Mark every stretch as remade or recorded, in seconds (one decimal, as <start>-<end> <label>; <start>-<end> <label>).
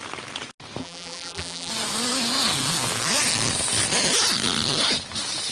0.0-0.8 recorded; 0.8-1.7 remade; 1.7-5.5 recorded